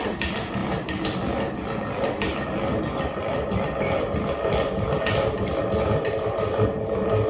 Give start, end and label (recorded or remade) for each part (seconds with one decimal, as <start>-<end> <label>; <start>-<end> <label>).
0.0-7.3 recorded